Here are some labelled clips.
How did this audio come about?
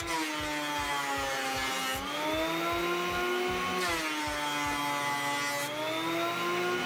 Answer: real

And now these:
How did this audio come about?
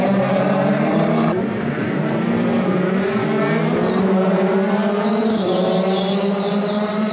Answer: fake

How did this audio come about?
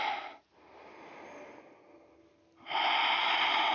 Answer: real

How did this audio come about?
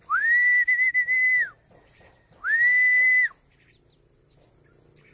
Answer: real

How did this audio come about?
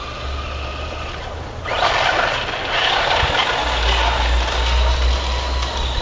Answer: real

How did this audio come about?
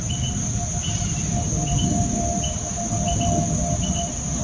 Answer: real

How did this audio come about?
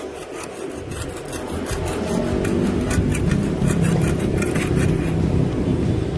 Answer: real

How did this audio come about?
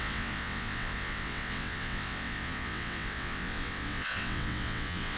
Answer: fake